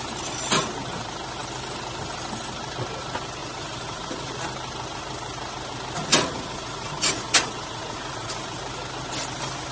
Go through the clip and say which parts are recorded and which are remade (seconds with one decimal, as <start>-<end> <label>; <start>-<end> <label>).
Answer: 0.0-3.4 recorded; 3.4-4.4 remade; 4.4-6.0 recorded; 6.0-8.6 remade; 8.6-9.7 recorded